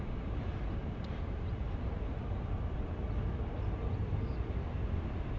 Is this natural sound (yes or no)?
yes